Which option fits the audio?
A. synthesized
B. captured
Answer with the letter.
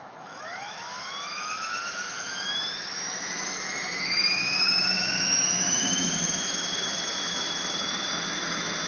A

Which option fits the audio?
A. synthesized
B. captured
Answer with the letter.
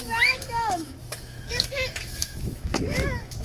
A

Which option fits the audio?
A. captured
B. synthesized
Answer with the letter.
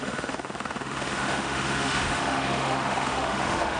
B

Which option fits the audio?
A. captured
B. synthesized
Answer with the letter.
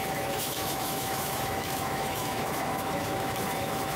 B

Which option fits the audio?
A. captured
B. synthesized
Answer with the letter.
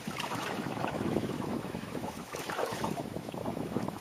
B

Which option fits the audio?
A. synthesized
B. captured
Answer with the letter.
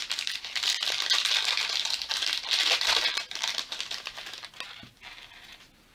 B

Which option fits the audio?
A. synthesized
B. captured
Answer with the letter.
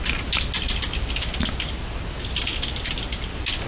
B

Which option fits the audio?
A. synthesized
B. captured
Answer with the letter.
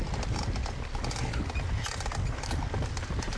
B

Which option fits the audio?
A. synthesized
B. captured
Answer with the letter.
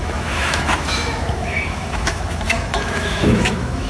A